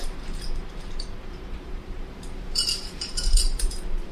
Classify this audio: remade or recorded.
remade